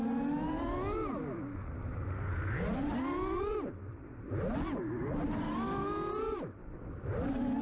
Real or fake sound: real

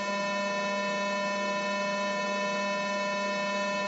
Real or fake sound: real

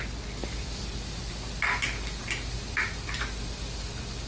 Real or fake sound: real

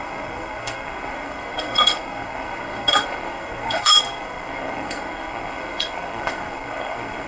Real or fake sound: fake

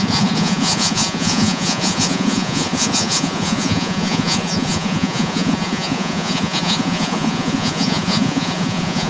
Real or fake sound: fake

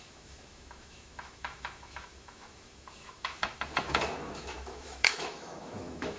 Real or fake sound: fake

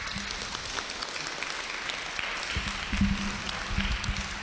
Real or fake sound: real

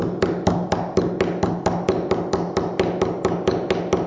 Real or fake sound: real